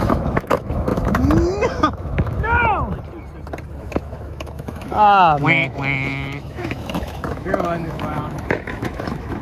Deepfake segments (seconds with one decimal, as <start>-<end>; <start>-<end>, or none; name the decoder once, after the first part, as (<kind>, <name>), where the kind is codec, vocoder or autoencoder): 0.0-2.6 (autoencoder, DAC-VAE); 3.8-9.4